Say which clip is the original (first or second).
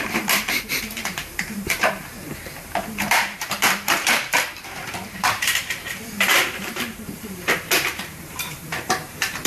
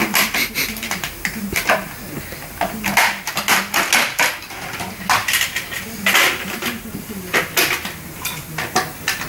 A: second